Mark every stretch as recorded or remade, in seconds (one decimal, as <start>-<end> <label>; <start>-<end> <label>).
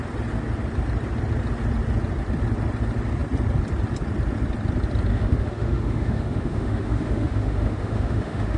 0.0-5.1 recorded; 5.1-8.6 remade